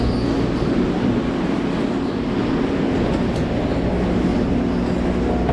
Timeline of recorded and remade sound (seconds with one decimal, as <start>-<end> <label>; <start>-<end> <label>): 0.0-5.5 recorded